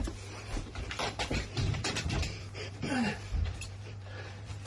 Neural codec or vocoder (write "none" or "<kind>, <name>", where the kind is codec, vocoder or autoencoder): vocoder, BigVGAN v2